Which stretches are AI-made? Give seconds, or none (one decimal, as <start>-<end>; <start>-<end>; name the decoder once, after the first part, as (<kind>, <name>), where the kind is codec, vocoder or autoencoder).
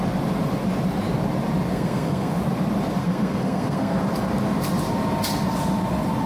1.7-2.3 (codec, SNAC); 3.0-4.0